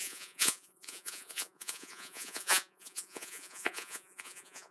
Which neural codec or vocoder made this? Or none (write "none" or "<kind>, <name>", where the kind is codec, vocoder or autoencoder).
vocoder, Vocos